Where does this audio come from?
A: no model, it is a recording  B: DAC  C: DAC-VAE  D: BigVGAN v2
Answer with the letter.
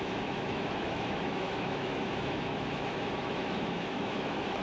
C